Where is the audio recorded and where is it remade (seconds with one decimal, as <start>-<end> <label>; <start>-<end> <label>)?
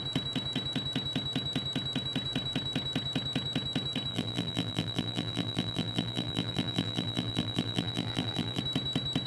0.0-4.1 recorded; 4.1-8.6 remade; 8.6-9.3 recorded